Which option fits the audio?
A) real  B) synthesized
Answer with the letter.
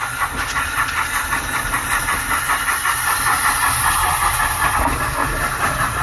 A